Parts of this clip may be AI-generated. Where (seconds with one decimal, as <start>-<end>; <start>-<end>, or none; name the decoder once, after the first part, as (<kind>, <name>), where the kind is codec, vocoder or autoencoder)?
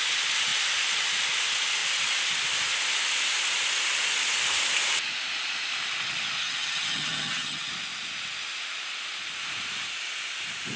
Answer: 6.4-7.7 (vocoder, HiFi-GAN)